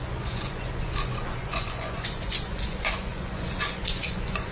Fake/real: fake